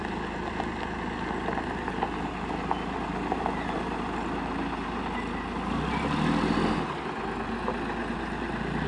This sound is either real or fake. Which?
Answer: real